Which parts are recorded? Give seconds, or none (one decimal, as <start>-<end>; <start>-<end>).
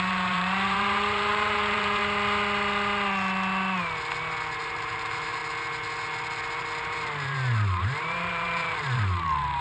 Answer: 2.0-4.6; 5.4-6.8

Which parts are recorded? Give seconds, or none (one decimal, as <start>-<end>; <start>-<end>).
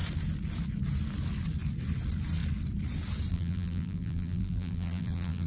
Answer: 0.0-3.3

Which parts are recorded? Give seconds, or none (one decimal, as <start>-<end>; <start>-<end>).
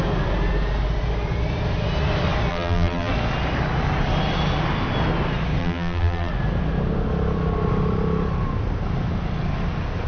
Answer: 0.0-2.5; 3.1-5.6; 6.3-10.1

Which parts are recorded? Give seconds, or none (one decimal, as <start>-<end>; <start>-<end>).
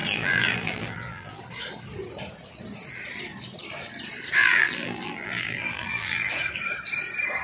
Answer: 1.4-4.4; 6.3-7.4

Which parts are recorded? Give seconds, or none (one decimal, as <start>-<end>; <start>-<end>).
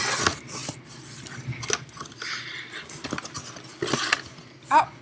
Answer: 0.0-5.0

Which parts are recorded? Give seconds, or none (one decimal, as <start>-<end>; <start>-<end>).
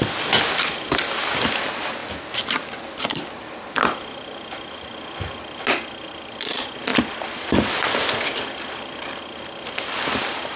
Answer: 2.0-6.2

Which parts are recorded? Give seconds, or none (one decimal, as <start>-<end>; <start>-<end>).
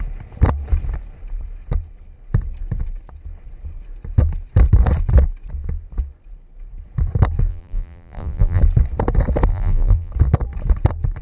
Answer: 0.0-7.5; 8.6-9.5; 10.1-11.2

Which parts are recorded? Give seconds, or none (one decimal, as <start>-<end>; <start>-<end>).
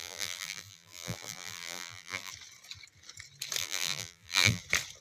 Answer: 2.3-3.6; 4.6-5.0